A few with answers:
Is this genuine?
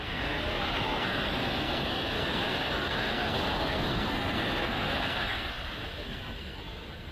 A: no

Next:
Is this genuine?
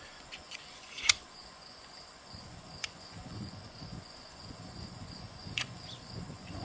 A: no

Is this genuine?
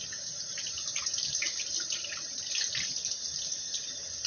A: no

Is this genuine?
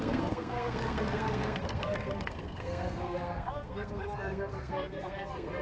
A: no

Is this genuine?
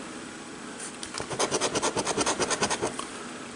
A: yes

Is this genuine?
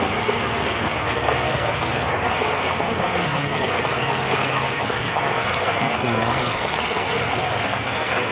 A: no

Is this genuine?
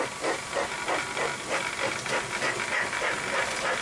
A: yes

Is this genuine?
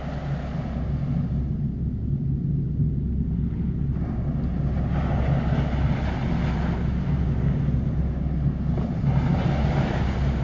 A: yes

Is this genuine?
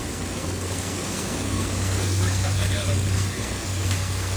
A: no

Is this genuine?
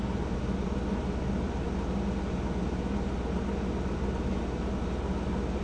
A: yes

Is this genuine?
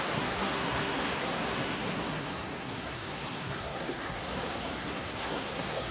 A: no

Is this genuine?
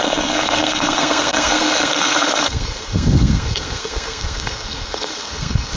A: no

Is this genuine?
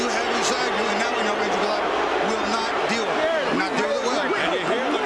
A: yes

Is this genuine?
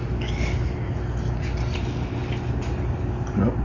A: yes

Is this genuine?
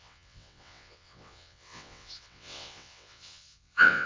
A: no